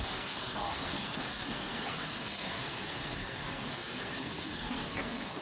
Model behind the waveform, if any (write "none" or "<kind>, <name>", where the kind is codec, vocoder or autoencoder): codec, SNAC